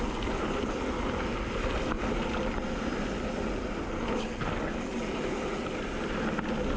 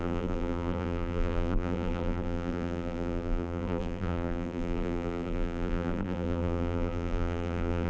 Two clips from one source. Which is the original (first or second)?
first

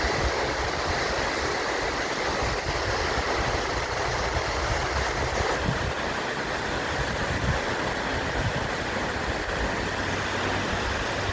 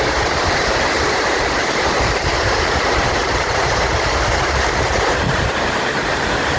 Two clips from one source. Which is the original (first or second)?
first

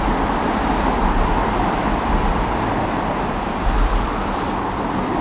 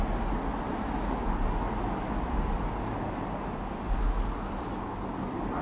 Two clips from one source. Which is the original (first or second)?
second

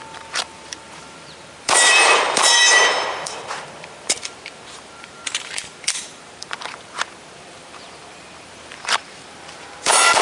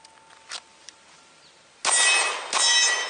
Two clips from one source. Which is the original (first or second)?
second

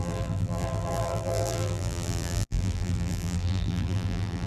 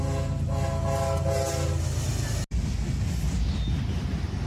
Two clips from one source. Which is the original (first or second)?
second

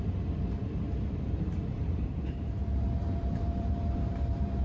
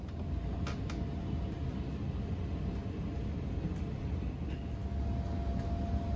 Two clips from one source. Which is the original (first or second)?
second